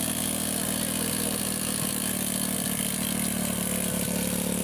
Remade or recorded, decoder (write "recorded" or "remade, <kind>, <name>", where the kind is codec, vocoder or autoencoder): recorded